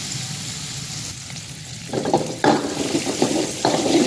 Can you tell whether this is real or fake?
real